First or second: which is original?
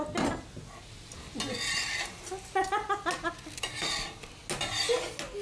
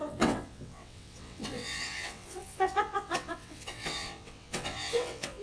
first